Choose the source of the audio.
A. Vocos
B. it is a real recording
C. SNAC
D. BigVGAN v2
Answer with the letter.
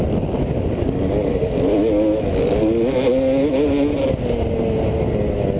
B